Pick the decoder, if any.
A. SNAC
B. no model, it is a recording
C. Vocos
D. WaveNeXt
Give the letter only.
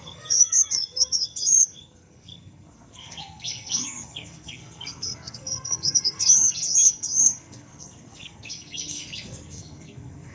A